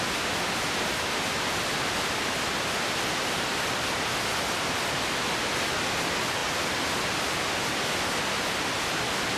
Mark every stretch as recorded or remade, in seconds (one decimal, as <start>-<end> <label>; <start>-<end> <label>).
0.0-9.4 recorded